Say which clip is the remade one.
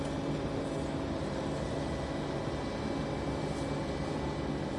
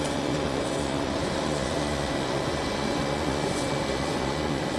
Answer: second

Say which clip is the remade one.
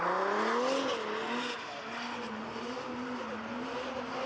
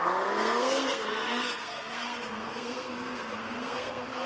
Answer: second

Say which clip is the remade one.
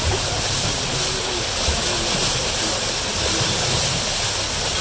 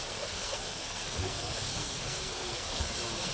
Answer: second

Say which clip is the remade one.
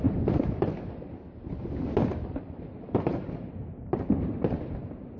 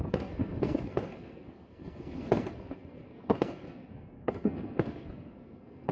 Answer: second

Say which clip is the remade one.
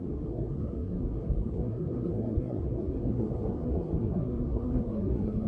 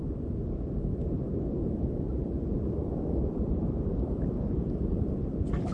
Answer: first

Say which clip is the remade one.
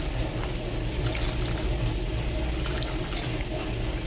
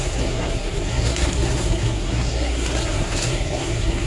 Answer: second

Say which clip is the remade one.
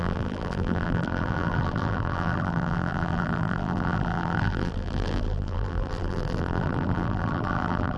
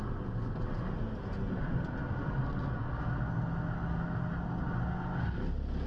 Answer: first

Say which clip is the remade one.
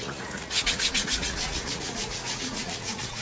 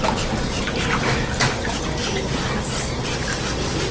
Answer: first